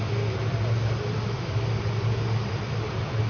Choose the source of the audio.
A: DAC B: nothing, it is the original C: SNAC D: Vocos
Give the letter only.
B